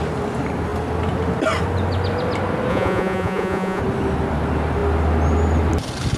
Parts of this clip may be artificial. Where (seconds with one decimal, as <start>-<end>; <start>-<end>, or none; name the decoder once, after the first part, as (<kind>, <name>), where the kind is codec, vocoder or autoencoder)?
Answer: 2.7-3.8 (vocoder, Vocos)